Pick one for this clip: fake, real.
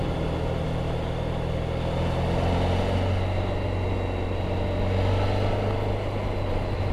real